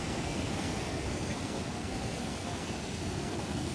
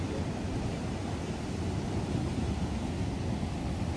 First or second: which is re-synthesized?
first